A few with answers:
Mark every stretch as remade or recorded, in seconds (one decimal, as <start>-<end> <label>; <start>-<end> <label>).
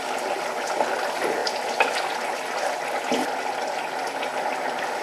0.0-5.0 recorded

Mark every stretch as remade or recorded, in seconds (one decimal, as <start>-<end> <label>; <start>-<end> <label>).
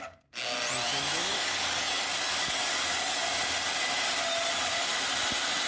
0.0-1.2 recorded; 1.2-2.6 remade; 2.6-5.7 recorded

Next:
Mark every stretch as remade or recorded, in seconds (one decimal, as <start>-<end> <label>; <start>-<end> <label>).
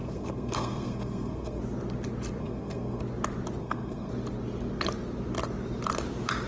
0.0-1.6 remade; 1.6-2.4 recorded; 2.4-3.0 remade; 3.0-3.6 recorded; 3.6-4.1 remade; 4.1-6.5 recorded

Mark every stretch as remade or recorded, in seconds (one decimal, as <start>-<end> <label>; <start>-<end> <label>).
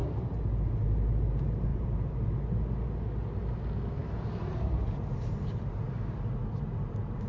0.0-1.7 recorded; 1.7-2.2 remade; 2.2-4.0 recorded; 4.0-5.0 remade; 5.0-7.3 recorded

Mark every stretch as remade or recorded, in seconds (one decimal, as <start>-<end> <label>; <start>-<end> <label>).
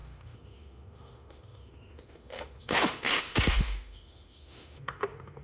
0.0-5.4 remade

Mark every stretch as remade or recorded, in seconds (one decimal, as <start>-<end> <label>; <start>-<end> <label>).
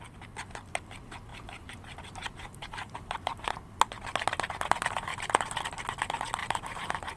0.0-1.3 recorded; 1.3-3.5 remade; 3.5-6.4 recorded; 6.4-7.2 remade